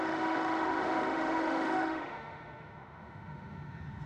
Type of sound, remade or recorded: remade